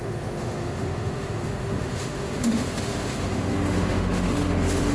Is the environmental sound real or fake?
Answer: fake